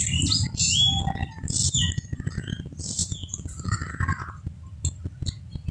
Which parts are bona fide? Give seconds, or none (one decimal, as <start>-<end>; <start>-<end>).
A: 0.0-3.0; 3.8-5.7